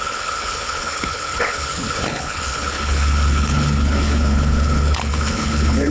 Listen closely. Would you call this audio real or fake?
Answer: fake